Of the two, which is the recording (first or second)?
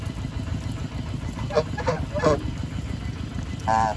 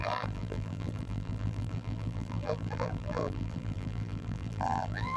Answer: first